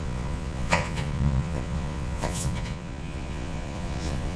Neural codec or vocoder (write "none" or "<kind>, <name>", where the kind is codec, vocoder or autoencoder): vocoder, Vocos